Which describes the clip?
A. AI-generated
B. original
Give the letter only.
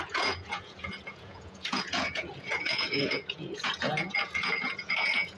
A